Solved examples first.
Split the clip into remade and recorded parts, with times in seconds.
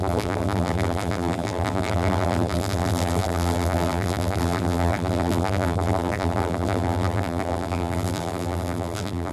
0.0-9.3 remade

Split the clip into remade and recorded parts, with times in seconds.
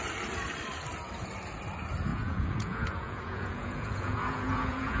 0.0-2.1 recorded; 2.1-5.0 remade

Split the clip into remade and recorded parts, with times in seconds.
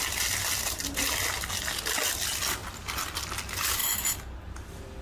0.0-5.0 recorded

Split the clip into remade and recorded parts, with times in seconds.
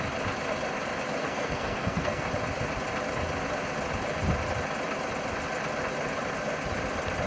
0.0-1.2 recorded; 1.2-2.3 remade; 2.3-7.3 recorded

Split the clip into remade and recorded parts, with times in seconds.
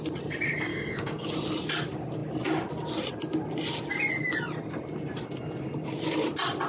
0.0-0.7 recorded; 0.7-1.3 remade; 1.3-6.7 recorded